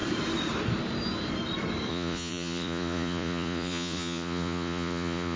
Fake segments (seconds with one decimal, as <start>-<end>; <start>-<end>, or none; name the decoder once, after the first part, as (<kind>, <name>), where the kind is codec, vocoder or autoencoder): 1.9-5.4 (vocoder, Vocos)